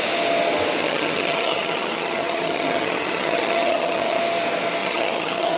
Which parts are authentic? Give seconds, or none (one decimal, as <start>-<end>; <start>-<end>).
0.0-0.8; 4.2-4.8